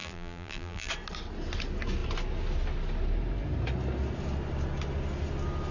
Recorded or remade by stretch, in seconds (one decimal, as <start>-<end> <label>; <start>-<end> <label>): 0.0-0.9 remade; 0.9-5.7 recorded